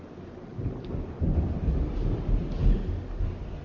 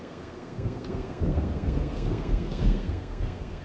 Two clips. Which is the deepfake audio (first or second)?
second